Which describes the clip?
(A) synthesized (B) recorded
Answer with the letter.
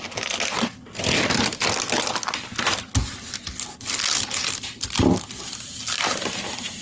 B